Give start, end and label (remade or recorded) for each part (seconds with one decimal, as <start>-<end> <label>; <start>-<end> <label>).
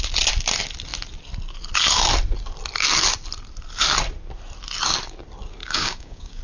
0.0-5.6 recorded; 5.6-6.4 remade